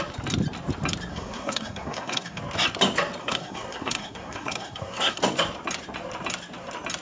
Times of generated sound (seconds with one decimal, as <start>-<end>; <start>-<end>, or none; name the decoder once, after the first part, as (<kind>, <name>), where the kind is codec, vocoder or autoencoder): 1.1-2.4 (codec, SNAC); 3.2-5.2